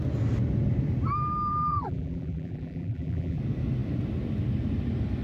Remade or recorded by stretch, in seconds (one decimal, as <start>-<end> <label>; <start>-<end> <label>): 0.0-1.5 recorded; 1.5-3.4 remade; 3.4-5.2 recorded